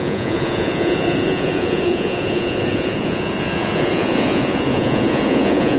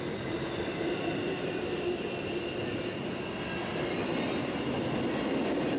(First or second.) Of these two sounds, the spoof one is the first